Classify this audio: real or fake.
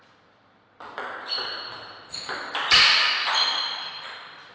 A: real